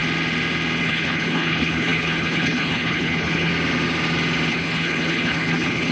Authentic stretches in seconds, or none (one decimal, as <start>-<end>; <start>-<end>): 0.0-0.8; 3.5-4.5